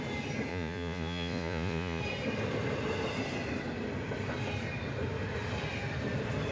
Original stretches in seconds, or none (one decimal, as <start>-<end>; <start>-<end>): 0.0-0.5; 2.0-6.5